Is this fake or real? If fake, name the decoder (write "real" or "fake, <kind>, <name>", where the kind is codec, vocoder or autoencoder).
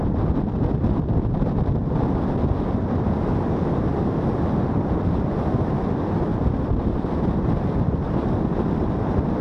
real